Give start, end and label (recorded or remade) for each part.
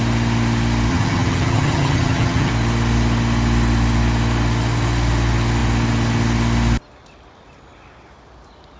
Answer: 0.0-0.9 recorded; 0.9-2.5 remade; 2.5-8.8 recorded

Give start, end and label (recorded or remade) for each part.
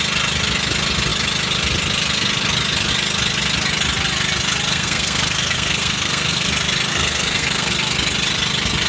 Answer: 0.0-4.7 recorded; 4.7-6.5 remade; 6.5-6.9 recorded; 6.9-7.7 remade; 7.7-8.9 recorded